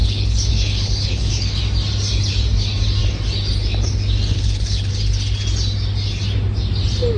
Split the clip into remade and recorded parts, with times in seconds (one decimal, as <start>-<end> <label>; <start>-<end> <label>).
0.0-1.6 remade; 1.6-4.3 recorded; 4.3-4.9 remade; 4.9-7.2 recorded